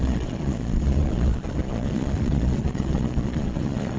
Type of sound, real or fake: fake